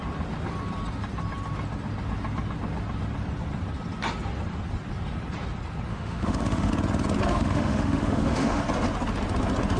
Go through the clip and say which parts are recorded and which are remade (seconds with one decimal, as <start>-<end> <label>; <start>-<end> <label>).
0.0-5.9 recorded; 5.9-6.7 remade; 6.7-7.3 recorded; 7.3-8.6 remade; 8.6-9.8 recorded